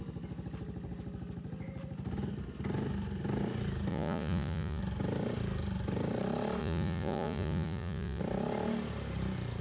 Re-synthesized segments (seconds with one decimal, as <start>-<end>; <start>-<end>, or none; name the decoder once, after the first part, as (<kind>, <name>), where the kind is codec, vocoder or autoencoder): 3.9-4.8 (vocoder, Vocos); 6.6-8.2